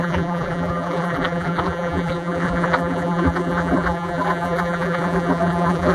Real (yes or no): no